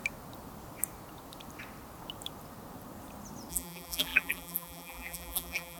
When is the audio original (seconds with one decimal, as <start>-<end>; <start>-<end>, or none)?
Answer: 0.0-3.5

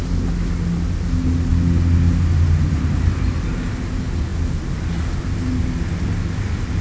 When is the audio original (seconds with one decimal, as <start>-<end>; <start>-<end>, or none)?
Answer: 0.0-6.8

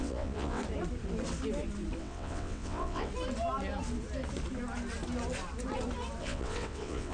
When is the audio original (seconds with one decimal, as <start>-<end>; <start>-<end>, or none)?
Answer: 0.6-2.0; 3.1-6.2

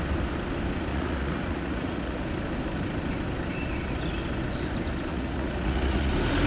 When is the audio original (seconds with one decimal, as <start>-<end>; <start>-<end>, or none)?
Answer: 0.0-0.9; 2.2-5.1; 6.1-6.5

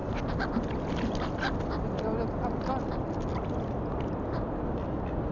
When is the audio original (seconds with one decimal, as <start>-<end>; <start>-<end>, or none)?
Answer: 0.0-5.3

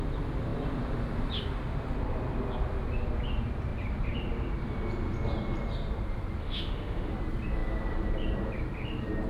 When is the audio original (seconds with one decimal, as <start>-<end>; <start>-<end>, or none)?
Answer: 0.0-6.4; 7.1-9.3